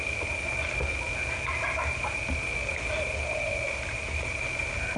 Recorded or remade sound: recorded